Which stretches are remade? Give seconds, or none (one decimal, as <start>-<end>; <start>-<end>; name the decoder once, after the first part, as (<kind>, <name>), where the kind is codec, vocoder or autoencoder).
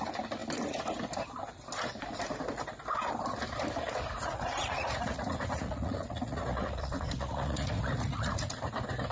4.2-8.7 (vocoder, Vocos)